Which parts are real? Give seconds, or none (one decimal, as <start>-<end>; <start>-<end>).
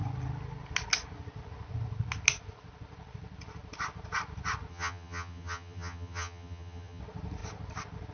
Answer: 0.0-4.7; 7.0-8.1